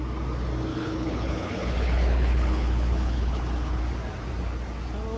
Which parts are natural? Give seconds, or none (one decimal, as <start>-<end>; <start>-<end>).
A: 0.0-0.7; 3.8-5.2